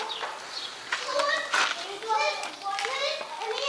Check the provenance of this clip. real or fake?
real